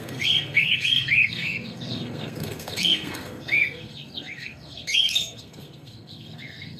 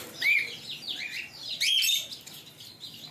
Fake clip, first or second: first